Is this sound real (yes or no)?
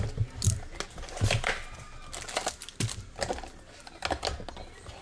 yes